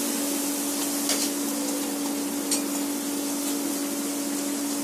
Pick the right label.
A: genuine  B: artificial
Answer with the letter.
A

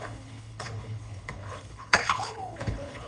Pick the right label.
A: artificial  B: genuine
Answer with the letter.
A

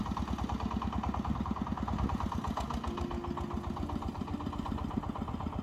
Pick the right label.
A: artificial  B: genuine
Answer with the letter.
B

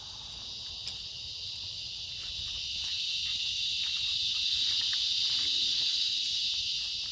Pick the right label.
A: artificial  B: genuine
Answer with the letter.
B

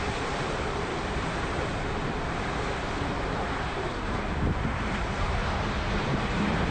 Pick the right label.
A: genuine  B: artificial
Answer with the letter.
B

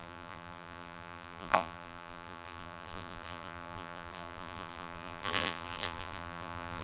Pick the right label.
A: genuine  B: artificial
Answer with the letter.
B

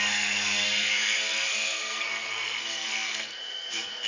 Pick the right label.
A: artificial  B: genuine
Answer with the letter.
A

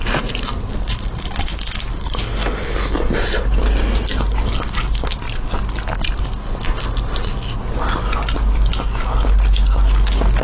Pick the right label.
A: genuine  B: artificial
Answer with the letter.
A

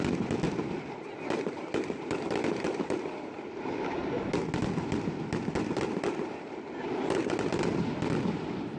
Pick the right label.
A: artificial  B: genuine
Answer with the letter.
B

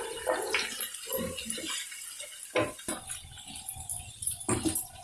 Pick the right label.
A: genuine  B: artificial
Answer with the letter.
A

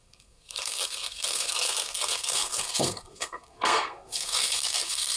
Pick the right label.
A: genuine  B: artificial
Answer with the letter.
B